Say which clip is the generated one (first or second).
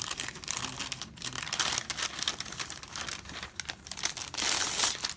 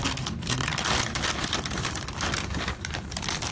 second